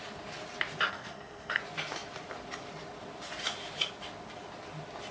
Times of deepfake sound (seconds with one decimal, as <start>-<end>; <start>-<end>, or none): 0.9-1.6